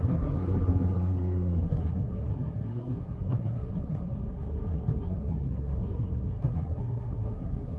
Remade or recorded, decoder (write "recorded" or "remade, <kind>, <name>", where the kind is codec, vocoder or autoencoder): remade, codec, SNAC